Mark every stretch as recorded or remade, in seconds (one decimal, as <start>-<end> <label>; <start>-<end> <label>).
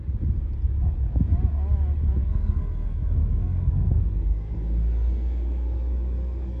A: 0.0-2.2 recorded; 2.2-6.6 remade